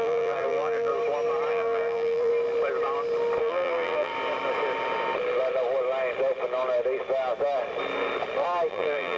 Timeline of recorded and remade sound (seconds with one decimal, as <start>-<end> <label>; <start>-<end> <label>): 0.0-0.9 remade; 0.9-1.5 recorded; 1.5-2.3 remade; 2.3-3.4 recorded; 3.4-4.1 remade; 4.1-8.7 recorded; 8.7-9.2 remade